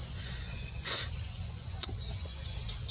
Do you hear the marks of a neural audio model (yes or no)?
yes